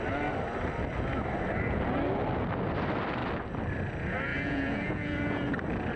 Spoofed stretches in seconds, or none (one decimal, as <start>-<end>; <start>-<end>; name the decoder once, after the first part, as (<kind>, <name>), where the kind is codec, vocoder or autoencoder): 4.3-5.5 (vocoder, Vocos)